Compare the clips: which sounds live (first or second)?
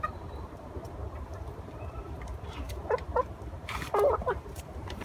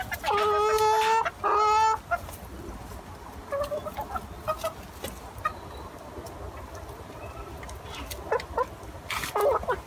second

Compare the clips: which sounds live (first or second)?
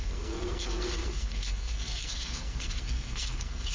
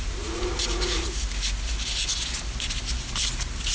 second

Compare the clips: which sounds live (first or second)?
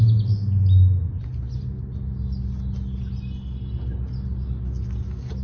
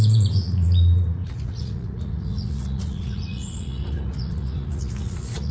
first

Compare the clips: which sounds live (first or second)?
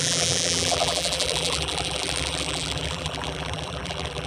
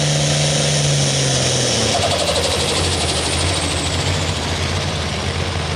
second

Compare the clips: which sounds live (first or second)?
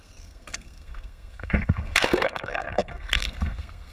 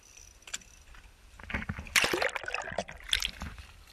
second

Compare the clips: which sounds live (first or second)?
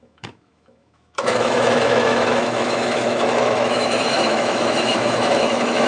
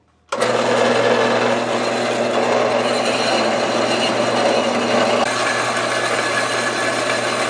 second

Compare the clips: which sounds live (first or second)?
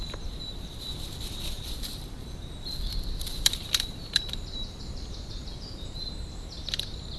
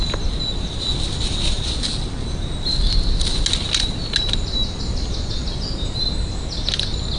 second